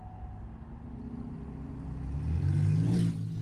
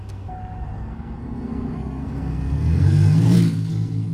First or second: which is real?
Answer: first